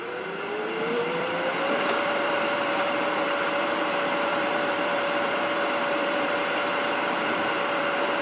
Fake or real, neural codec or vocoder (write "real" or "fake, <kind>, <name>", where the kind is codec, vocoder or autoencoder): fake, vocoder, BigVGAN v2